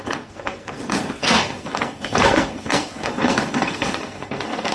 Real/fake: fake